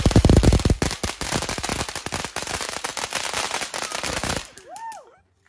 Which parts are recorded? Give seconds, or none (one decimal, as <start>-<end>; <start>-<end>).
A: 1.7-2.2; 2.9-4.1